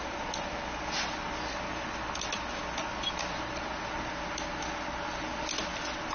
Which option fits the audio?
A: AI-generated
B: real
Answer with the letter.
B